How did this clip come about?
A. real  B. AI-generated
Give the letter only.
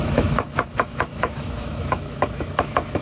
B